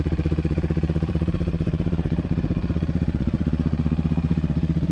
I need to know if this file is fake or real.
fake